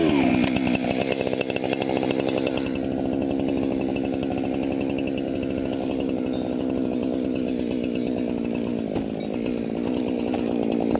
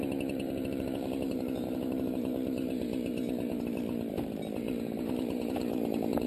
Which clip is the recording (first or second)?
first